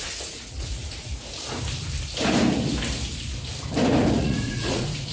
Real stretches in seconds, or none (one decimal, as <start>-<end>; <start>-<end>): 1.1-4.2